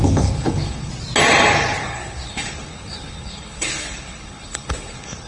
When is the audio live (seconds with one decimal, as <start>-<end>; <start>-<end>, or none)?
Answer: 0.9-1.8